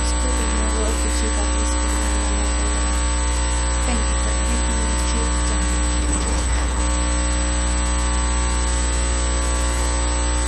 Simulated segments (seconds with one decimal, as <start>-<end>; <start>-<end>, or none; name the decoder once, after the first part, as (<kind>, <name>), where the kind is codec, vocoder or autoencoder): 6.0-6.8 (codec, HILCodec)